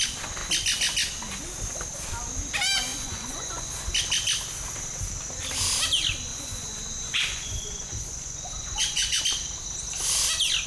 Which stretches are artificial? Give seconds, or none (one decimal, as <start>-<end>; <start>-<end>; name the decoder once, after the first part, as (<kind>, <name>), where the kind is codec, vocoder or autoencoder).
2.9-3.8 (vocoder, Vocos); 6.3-9.2